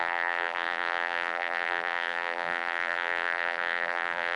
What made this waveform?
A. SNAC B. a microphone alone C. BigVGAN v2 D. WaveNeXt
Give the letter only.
C